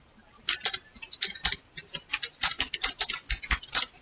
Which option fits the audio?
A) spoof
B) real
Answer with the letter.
B